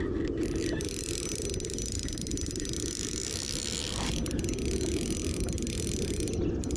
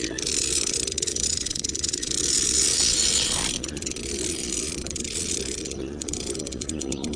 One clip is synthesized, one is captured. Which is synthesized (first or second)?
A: second